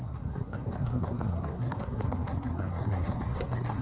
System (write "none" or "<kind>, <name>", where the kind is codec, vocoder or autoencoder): codec, SNAC